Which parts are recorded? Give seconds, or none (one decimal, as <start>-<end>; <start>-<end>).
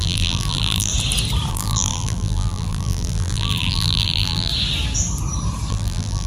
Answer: 0.9-1.5; 4.5-5.7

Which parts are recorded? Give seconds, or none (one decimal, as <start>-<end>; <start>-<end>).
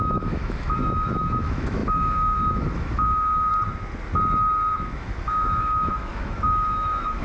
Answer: 3.5-4.7